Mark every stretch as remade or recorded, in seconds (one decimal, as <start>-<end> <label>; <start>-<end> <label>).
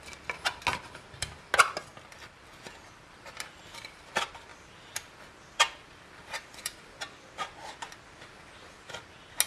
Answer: 0.0-1.9 recorded; 1.9-4.1 remade; 4.1-4.5 recorded; 4.5-6.8 remade; 6.8-9.5 recorded